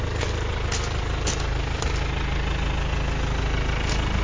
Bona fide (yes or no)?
yes